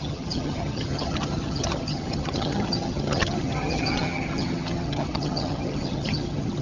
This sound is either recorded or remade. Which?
remade